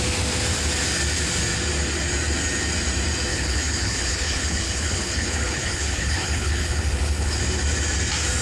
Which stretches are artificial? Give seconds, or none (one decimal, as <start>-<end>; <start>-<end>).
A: 3.3-7.4